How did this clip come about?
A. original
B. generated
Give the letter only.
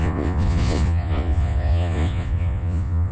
B